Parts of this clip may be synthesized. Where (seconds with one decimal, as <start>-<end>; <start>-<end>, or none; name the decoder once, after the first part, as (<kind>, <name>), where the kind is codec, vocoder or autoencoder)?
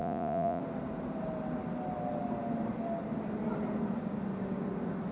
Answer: 0.0-0.6 (vocoder, Vocos)